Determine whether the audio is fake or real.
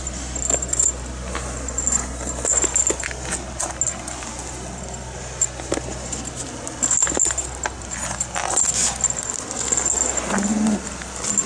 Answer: real